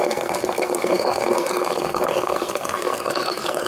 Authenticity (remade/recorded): remade